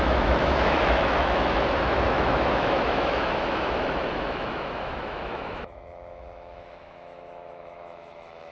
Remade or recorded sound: remade